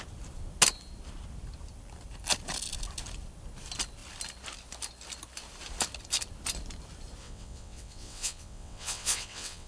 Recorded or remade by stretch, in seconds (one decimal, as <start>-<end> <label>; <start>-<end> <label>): 0.0-7.2 recorded; 7.2-9.7 remade